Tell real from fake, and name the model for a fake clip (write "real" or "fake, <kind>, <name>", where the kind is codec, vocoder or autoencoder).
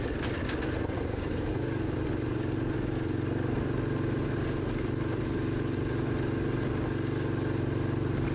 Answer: real